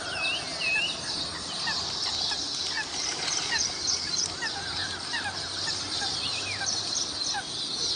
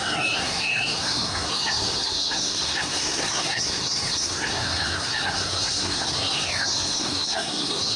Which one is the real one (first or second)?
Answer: first